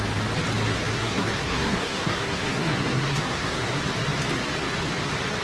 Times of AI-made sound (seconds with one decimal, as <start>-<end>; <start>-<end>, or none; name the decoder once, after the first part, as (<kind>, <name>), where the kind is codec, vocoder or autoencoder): 0.9-3.8 (codec, SNAC)